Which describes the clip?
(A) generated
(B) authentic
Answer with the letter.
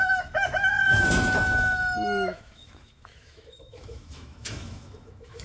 A